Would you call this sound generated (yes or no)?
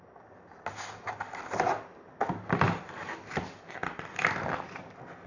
no